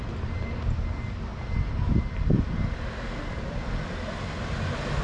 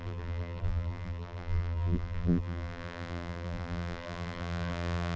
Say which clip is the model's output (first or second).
second